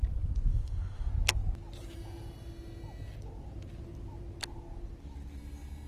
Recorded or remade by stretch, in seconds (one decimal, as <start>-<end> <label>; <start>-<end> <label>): 0.0-0.5 recorded; 0.5-1.1 remade; 1.1-5.9 recorded